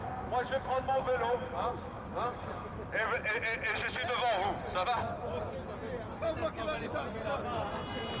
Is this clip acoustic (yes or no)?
yes